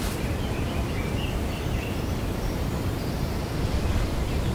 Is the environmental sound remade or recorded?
recorded